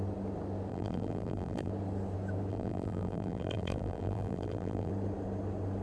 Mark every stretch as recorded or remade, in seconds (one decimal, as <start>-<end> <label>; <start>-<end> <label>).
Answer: 0.0-0.7 recorded; 0.7-1.7 remade; 1.7-2.5 recorded; 2.5-4.9 remade; 4.9-5.8 recorded